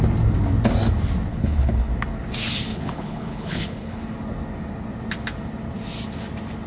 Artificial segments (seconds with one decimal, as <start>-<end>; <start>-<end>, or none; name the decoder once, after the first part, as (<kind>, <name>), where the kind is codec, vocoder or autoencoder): 1.3-1.9 (codec, HILCodec); 2.7-4.0